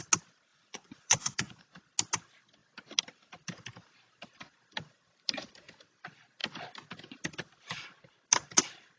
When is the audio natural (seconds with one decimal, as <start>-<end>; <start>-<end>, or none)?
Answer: 0.0-0.5; 1.6-9.0